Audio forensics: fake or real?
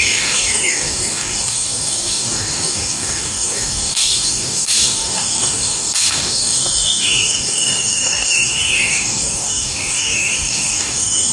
fake